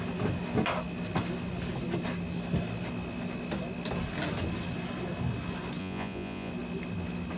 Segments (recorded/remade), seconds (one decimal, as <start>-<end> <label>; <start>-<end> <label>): 0.0-5.8 recorded; 5.8-6.5 remade; 6.5-7.4 recorded